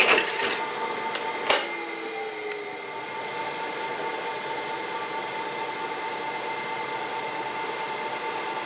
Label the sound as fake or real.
real